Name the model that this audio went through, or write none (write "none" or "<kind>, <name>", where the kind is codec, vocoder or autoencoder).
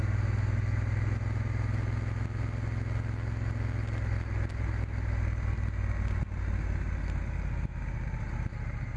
none